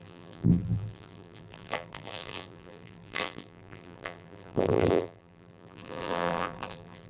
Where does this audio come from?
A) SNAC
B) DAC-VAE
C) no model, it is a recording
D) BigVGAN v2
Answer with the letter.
D